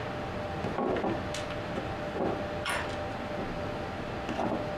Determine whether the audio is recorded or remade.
recorded